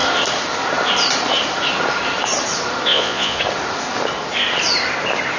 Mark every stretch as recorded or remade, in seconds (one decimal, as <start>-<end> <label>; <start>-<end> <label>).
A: 0.0-2.9 recorded; 2.9-3.4 remade; 3.4-5.4 recorded